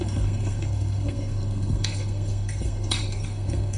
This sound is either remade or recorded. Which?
remade